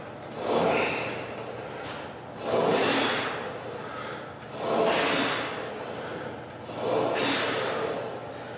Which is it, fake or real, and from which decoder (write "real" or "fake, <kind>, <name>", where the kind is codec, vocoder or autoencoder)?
real